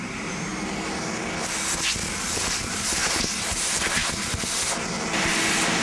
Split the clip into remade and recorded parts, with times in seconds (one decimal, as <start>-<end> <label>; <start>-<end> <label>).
0.0-0.5 remade; 0.5-2.1 recorded; 2.1-3.0 remade; 3.0-3.5 recorded; 3.5-4.0 remade; 4.0-5.8 recorded